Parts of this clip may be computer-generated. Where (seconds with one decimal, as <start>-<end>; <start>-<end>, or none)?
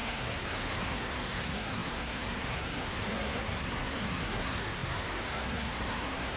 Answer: 0.0-6.4